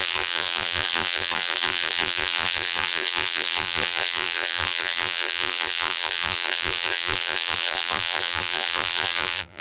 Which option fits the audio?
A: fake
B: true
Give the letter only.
A